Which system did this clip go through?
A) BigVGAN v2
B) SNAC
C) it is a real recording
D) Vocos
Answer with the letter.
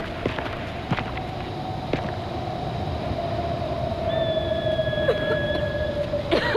C